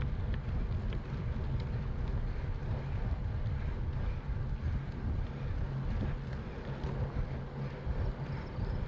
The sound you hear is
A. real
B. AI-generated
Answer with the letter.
A